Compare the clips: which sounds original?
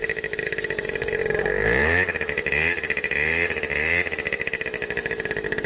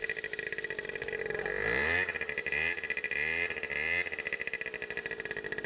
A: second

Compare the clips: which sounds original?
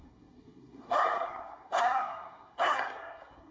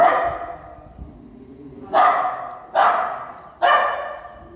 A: second